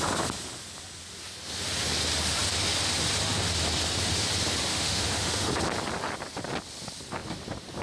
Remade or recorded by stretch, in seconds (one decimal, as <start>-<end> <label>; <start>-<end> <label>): 0.0-4.7 recorded; 4.7-5.5 remade; 5.5-7.8 recorded